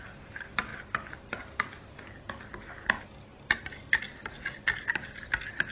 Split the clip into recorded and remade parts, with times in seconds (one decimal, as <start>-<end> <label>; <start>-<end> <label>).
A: 0.0-5.7 recorded